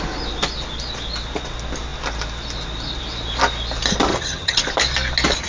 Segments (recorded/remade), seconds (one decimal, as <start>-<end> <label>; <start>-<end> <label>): 0.0-4.1 recorded; 4.1-4.6 remade; 4.6-5.5 recorded